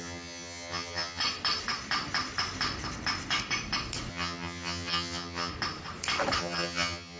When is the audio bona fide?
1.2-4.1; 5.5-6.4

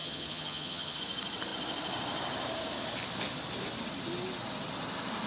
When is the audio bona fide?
1.0-5.3

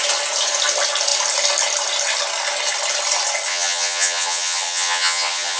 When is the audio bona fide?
0.0-3.5

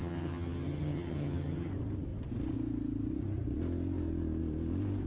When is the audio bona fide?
1.7-5.1

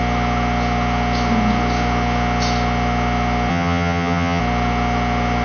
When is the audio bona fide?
0.0-3.5; 4.4-5.4

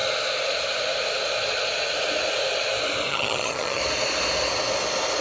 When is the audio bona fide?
0.0-3.1; 3.8-5.2

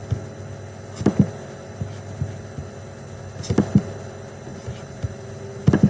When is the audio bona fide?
0.0-5.9